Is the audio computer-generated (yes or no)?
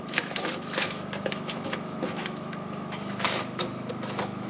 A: yes